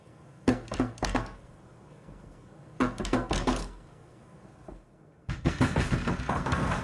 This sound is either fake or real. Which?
fake